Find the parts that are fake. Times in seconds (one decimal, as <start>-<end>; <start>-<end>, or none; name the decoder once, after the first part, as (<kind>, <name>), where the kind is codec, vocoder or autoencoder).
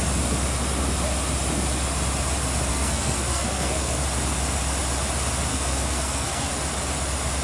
2.7-4.0 (codec, SNAC); 5.5-6.5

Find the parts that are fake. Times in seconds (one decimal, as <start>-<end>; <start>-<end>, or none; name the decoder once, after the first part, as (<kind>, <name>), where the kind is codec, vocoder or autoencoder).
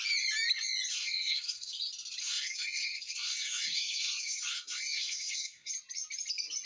0.9-1.7 (codec, SNAC); 2.2-5.7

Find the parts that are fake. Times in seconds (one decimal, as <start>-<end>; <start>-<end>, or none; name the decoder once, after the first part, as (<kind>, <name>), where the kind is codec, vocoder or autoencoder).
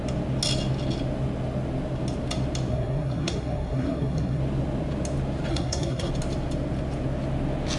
2.7-4.4 (codec, SNAC); 5.5-6.1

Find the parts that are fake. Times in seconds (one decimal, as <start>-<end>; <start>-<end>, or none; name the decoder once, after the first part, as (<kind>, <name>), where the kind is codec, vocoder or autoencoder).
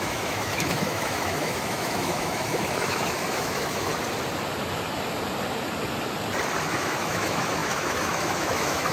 0.0-3.9 (autoencoder, DAC-VAE); 6.7-8.9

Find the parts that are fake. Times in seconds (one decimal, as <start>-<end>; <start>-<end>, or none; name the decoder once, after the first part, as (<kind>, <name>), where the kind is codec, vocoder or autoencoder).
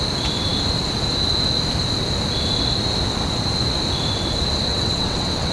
4.7-5.5 (vocoder, WaveNeXt)